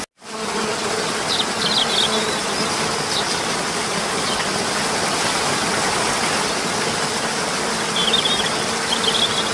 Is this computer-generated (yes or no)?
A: no